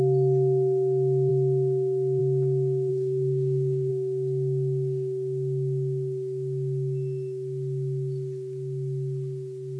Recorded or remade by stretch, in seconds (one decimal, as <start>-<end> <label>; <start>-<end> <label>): 0.0-2.9 recorded; 2.9-3.9 remade; 3.9-9.8 recorded